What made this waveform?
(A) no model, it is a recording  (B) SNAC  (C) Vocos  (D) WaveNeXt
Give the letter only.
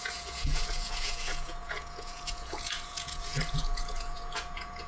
C